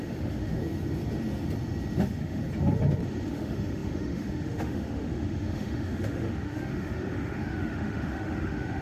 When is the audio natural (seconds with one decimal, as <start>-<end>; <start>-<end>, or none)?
0.6-2.0; 2.4-3.3